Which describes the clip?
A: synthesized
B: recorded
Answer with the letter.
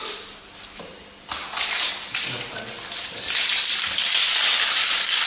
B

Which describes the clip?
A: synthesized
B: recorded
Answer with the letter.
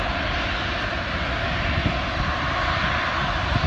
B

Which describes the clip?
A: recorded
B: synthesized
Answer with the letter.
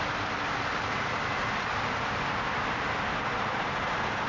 B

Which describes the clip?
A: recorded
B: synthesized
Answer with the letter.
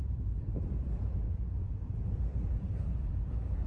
B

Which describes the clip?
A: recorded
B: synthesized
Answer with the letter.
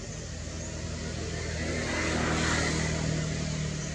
A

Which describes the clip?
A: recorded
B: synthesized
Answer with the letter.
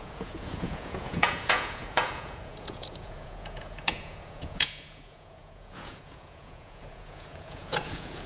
B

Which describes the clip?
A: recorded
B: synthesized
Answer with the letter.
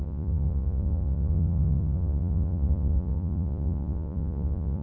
B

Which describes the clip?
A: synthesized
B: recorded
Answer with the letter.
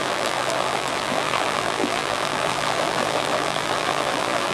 A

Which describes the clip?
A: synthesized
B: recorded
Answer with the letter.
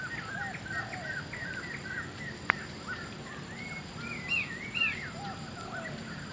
B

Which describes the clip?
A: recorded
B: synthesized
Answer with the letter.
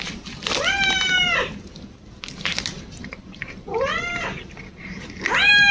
A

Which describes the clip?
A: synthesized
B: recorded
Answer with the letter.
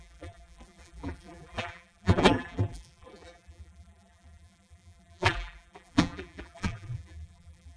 A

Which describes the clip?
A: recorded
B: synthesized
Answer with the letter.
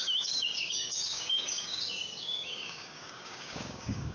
B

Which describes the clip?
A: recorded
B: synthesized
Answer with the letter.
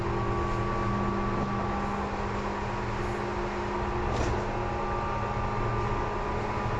A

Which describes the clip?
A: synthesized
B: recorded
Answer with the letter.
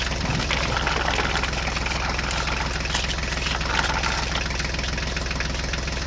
B